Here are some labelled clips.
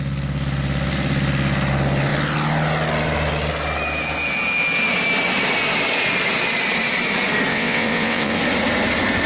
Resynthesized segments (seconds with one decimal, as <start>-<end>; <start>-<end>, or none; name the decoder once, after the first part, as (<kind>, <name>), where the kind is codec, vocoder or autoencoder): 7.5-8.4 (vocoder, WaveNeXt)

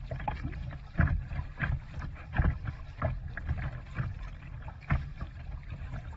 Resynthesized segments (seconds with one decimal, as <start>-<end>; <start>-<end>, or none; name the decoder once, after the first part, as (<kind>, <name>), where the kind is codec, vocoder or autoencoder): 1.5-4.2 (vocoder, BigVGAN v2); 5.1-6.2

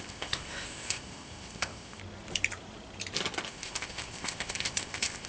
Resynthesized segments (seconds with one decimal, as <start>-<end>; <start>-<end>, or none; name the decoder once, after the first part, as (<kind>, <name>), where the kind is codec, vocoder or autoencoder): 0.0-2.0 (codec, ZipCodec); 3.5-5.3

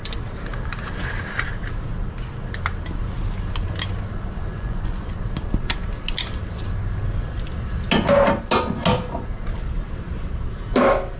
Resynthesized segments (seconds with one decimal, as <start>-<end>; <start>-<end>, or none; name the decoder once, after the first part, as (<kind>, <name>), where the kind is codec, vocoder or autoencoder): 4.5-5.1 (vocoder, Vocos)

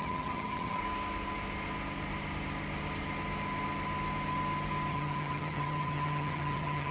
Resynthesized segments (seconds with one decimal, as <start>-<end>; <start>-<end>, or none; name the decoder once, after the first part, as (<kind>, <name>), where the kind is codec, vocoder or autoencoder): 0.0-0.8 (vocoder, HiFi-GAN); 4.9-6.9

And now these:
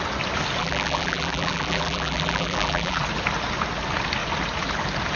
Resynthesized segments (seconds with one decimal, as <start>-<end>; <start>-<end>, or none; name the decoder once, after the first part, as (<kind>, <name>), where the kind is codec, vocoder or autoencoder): 0.6-3.0 (vocoder, BigVGAN v2)

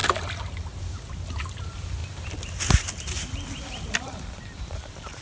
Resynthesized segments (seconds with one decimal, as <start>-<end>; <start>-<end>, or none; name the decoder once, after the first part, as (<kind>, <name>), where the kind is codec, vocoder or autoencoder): none